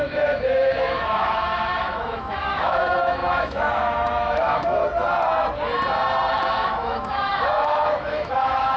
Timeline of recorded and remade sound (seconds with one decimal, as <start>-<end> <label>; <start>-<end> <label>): 0.0-4.8 remade; 4.8-6.3 recorded; 6.3-8.8 remade